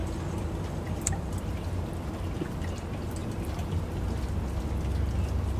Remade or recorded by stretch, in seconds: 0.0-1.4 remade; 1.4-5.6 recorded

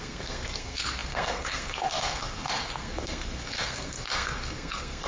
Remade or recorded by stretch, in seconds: 0.0-5.1 remade